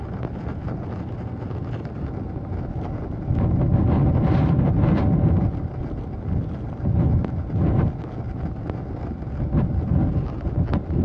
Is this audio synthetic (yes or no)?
no